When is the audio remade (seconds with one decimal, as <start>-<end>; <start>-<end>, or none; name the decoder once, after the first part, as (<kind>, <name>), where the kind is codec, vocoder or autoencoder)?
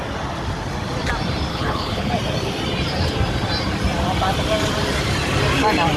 1.5-2.1 (codec, HILCodec)